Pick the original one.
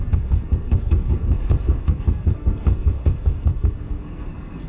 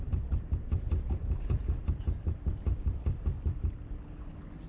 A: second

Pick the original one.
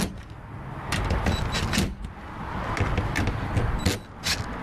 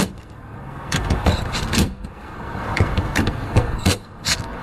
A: first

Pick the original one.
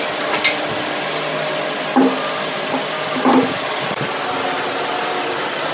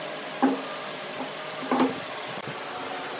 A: first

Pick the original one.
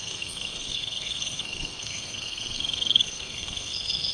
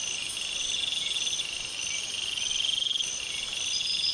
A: second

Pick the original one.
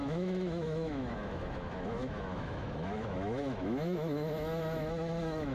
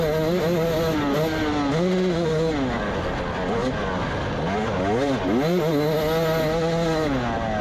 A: second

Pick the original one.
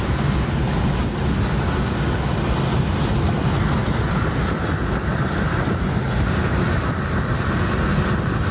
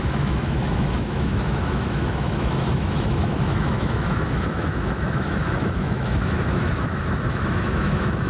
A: first